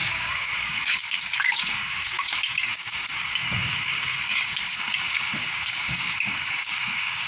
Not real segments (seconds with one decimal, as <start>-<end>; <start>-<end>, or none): 0.0-7.3